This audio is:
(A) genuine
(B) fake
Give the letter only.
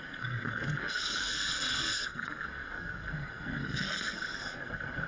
B